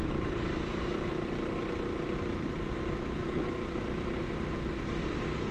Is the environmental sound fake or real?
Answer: real